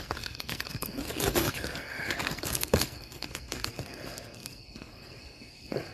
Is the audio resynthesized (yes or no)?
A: yes